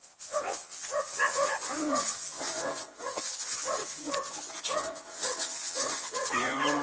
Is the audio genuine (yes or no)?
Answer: no